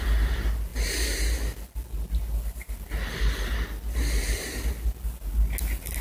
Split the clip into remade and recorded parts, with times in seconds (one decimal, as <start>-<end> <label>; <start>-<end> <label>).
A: 0.0-6.0 recorded